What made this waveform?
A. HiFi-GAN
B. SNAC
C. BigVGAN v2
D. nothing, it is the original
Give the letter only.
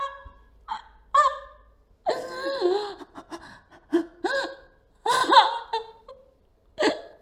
D